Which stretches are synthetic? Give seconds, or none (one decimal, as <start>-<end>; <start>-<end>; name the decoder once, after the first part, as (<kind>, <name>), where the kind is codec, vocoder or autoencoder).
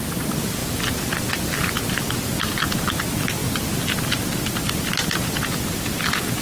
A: none